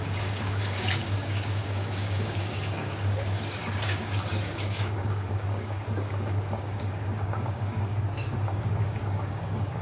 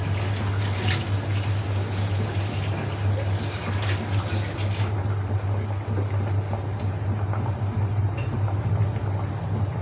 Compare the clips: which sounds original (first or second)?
second